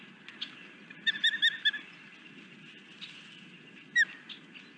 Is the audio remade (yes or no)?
no